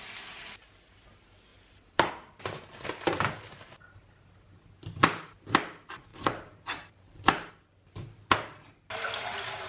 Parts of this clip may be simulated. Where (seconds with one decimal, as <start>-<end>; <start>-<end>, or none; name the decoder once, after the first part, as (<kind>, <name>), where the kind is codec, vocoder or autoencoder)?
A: 1.5-2.1 (vocoder, BigVGAN v2); 6.1-7.5